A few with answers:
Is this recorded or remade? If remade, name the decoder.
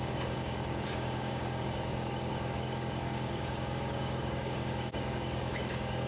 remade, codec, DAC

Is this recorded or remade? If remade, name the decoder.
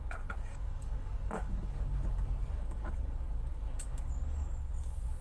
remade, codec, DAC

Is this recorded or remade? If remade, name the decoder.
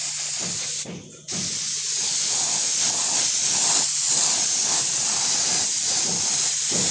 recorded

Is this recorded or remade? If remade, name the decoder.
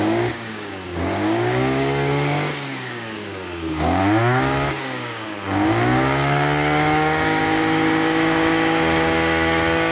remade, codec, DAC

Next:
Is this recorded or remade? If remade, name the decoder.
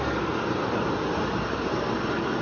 recorded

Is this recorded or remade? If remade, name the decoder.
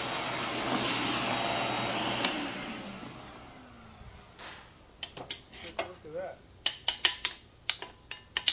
recorded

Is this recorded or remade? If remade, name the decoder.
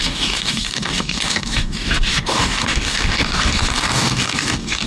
remade, codec, DAC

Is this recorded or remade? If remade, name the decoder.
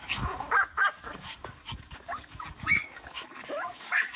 remade, codec, DAC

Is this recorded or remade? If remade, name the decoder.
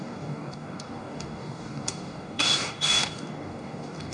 remade, codec, DAC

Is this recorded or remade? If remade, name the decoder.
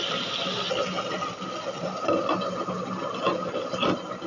recorded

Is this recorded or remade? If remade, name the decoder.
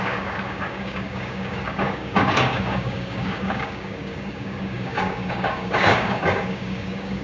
remade, codec, DAC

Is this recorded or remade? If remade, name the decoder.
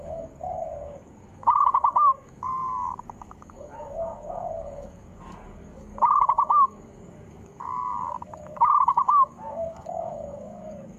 remade, codec, DAC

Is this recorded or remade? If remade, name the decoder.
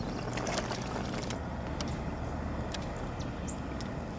recorded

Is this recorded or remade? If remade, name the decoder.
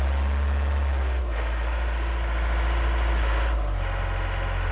recorded